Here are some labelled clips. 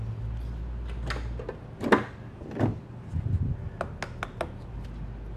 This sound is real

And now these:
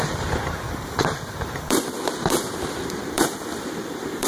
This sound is fake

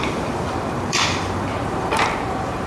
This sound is fake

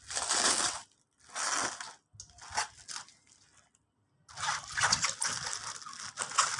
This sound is real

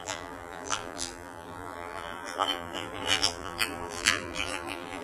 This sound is fake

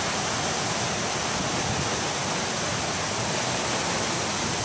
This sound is fake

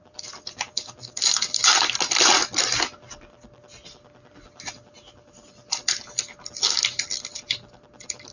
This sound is real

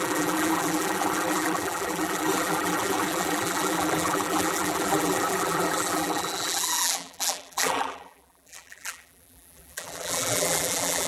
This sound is fake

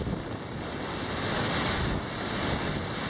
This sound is real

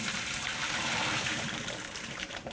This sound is fake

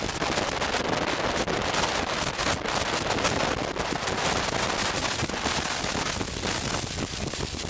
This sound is real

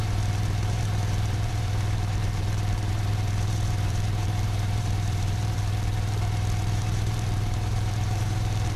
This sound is fake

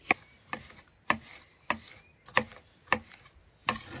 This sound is real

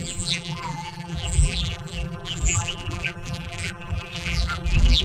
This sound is fake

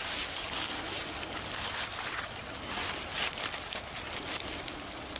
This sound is real